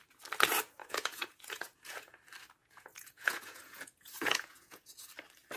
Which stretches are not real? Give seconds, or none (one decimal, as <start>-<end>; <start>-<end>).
0.8-2.1; 2.6-5.1